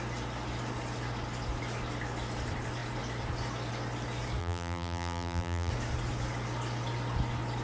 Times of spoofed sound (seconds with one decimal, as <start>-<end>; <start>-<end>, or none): 4.4-5.7